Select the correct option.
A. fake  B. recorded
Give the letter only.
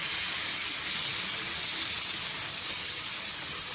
B